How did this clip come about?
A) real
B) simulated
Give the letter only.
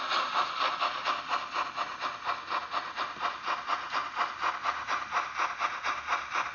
A